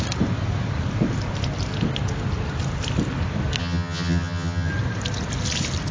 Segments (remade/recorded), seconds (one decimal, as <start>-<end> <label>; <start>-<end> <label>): 0.0-3.6 recorded; 3.6-4.7 remade; 4.7-5.9 recorded